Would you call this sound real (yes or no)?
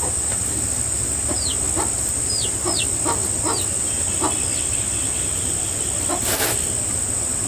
yes